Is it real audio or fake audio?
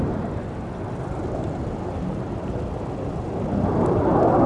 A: real